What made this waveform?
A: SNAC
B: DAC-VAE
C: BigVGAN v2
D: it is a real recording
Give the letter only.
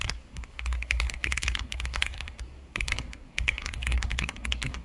A